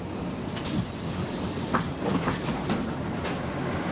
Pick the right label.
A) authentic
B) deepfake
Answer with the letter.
A